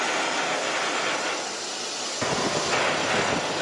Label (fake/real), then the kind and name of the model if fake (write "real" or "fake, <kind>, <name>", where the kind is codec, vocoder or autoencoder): real